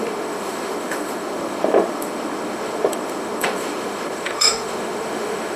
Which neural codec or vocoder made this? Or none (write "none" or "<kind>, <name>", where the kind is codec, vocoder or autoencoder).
autoencoder, DAC-VAE